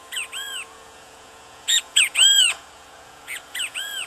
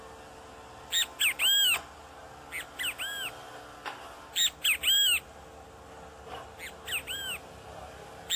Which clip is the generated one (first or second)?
first